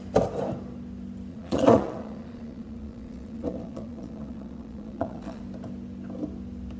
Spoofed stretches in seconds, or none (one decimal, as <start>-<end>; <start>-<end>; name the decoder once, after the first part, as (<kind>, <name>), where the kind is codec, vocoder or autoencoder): 1.3-5.4 (vocoder, Vocos)